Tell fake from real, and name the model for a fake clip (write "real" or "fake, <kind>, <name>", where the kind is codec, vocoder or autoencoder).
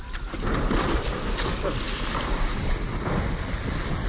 real